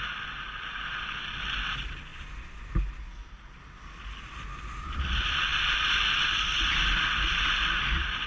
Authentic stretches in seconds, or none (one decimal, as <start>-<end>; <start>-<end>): 0.0-2.1; 3.4-8.3